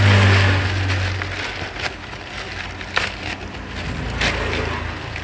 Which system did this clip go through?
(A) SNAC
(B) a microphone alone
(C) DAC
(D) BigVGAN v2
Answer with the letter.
B